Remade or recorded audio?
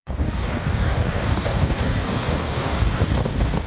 remade